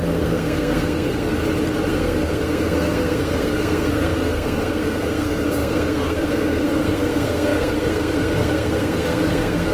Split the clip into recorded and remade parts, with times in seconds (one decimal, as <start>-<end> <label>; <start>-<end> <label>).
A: 0.0-1.4 remade; 1.4-1.9 recorded; 1.9-9.7 remade

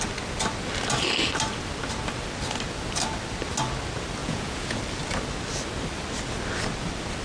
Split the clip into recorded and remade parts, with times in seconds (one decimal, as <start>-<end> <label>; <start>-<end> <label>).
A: 0.0-4.2 recorded; 4.2-4.8 remade; 4.8-7.2 recorded

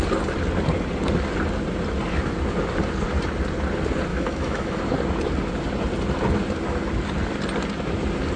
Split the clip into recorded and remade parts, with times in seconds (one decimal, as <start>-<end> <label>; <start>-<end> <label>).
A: 0.0-4.1 recorded; 4.1-4.8 remade; 4.8-8.4 recorded

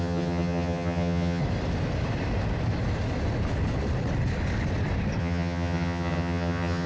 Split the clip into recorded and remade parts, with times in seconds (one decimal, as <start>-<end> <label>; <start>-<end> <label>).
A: 0.0-1.4 remade; 1.4-5.2 recorded; 5.2-6.9 remade

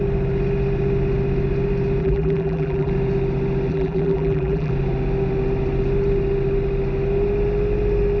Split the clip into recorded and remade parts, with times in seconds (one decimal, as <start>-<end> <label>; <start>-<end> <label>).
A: 0.0-2.0 recorded; 2.0-2.9 remade; 2.9-3.7 recorded; 3.7-4.7 remade; 4.7-8.2 recorded

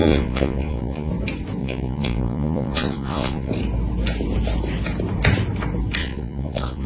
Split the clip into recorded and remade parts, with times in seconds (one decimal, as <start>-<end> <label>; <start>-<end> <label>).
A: 0.0-1.1 remade; 1.1-1.6 recorded; 1.6-3.5 remade; 3.5-6.0 recorded; 6.0-6.9 remade

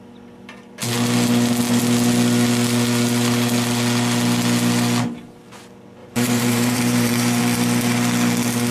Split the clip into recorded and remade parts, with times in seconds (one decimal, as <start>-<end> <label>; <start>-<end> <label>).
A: 0.0-6.0 recorded; 6.0-7.4 remade; 7.4-8.7 recorded

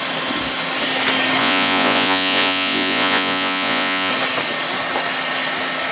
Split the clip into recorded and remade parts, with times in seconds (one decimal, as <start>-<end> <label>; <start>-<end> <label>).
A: 0.0-1.4 recorded; 1.4-4.1 remade; 4.1-5.9 recorded